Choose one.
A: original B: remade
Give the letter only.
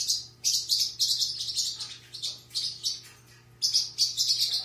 A